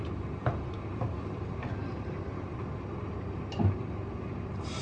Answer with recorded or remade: recorded